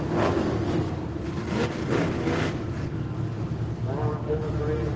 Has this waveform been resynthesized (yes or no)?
no